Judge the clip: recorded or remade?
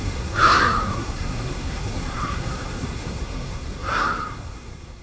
remade